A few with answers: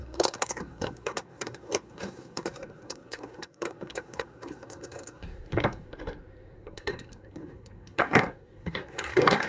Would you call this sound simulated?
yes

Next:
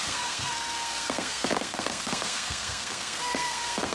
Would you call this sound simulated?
yes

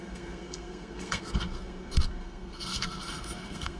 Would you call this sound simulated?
yes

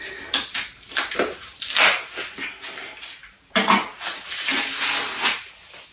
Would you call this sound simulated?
no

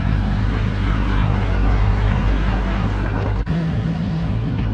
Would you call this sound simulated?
yes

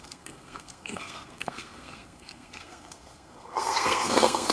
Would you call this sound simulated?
yes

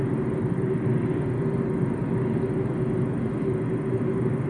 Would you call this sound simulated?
no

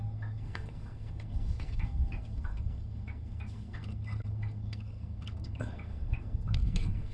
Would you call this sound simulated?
yes